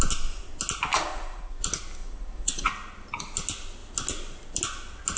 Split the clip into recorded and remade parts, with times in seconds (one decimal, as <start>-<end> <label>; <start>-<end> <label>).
0.0-1.1 recorded; 1.1-1.6 remade; 1.6-2.0 recorded; 2.0-2.7 remade; 2.7-5.2 recorded